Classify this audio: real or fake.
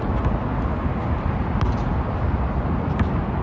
real